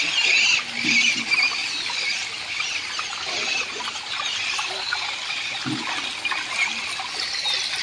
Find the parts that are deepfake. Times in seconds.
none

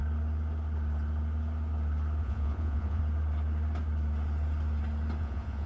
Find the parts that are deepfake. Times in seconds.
2.2-3.0 (vocoder, Vocos); 5.2-5.7

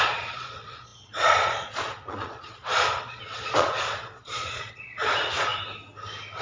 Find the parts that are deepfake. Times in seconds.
0.0-5.5 (vocoder, Vocos)

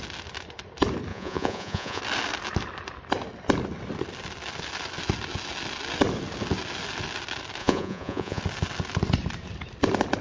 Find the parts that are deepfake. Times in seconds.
1.1-2.0 (vocoder, Vocos); 7.6-8.4

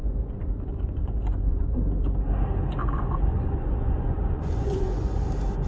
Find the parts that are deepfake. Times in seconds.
0.0-1.8 (vocoder, Vocos); 2.8-5.3

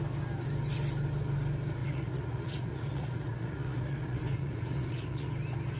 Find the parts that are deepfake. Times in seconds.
1.8-5.3 (vocoder, Vocos)